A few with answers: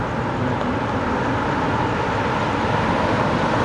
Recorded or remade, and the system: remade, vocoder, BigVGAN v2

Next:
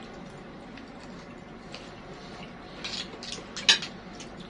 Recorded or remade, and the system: recorded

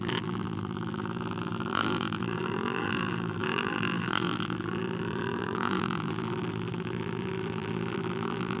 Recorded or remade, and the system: remade, vocoder, BigVGAN v2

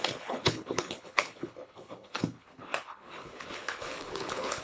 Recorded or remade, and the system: remade, codec, HILCodec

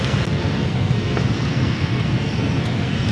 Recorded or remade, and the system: remade, codec, SNAC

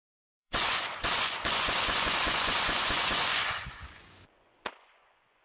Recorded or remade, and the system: remade, vocoder, Vocos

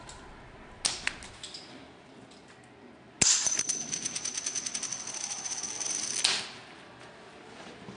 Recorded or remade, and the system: recorded